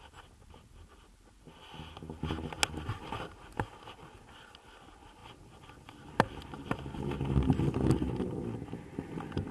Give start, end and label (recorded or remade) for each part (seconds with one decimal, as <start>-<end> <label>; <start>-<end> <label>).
0.0-9.5 recorded